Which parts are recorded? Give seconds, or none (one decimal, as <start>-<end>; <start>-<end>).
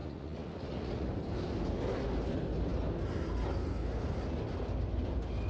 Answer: 1.1-5.5